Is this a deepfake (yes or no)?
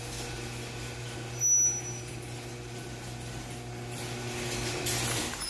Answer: no